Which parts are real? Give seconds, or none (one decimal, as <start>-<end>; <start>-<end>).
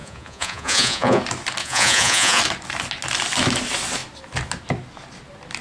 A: 1.2-1.6; 2.4-5.6